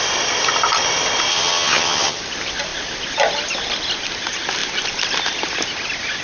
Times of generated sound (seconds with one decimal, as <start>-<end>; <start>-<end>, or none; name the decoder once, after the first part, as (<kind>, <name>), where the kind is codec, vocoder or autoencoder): 1.3-2.2 (vocoder, HiFi-GAN)